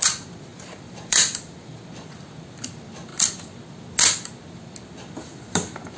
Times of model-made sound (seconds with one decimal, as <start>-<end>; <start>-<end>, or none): 0.5-1.8